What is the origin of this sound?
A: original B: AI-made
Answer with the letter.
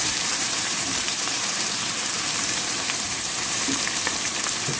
B